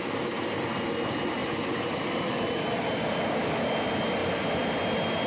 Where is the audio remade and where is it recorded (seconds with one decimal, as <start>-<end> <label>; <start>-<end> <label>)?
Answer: 0.0-1.4 recorded; 1.4-3.5 remade; 3.5-4.2 recorded; 4.2-5.3 remade